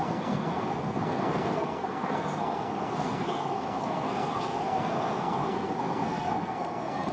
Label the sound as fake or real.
fake